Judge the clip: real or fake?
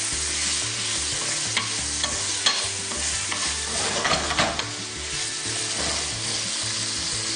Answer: real